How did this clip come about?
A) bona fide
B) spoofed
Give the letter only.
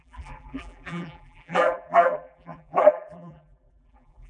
B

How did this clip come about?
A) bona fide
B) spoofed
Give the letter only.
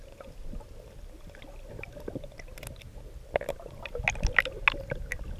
A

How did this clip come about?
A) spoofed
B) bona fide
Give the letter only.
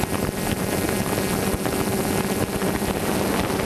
B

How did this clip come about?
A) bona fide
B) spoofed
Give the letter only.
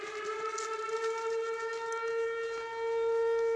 A